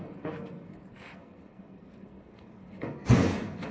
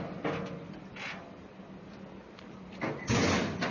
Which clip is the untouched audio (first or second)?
second